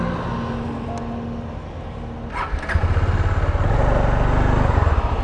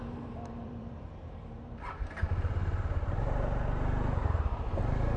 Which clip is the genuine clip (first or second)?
first